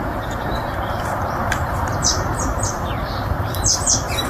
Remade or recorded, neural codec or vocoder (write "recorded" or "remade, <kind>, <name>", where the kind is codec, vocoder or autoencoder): remade, vocoder, BigVGAN v2